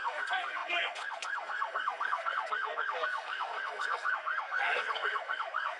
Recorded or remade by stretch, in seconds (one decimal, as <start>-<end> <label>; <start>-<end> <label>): 0.0-5.8 remade